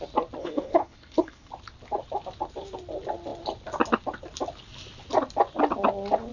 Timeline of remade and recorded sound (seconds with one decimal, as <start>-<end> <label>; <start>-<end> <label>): 0.0-0.4 recorded; 0.4-1.5 remade; 1.5-6.3 recorded